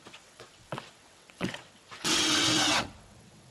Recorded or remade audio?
remade